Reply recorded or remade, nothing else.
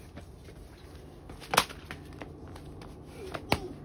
recorded